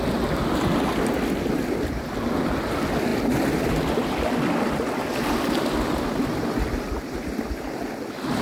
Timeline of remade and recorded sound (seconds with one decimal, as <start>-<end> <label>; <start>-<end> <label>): 0.0-8.4 recorded

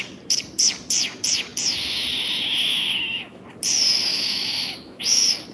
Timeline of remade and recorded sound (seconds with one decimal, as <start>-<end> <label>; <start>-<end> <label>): 0.0-2.7 recorded; 2.7-3.4 remade; 3.4-4.1 recorded; 4.1-5.0 remade; 5.0-5.5 recorded